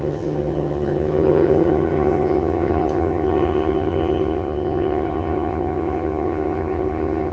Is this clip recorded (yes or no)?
no